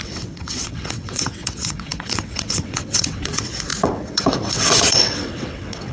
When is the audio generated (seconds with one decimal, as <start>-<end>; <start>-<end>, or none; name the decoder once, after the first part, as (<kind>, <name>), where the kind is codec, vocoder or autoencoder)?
0.0-5.9 (vocoder, WaveNeXt)